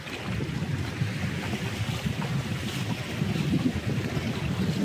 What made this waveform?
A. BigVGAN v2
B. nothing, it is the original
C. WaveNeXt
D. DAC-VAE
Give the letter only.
B